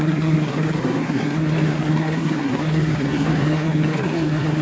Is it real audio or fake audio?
fake